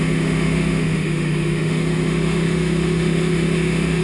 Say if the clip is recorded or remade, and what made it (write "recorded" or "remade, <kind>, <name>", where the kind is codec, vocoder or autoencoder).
remade, autoencoder, DAC-VAE